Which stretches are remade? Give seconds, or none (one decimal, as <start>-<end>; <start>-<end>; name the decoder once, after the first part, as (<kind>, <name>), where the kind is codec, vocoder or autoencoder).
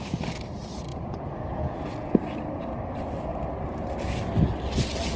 0.9-2.2 (vocoder, Vocos)